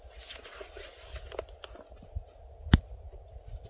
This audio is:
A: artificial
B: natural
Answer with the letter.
B